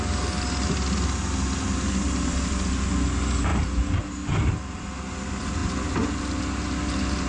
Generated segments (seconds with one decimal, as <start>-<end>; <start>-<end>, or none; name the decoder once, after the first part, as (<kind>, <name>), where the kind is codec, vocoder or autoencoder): none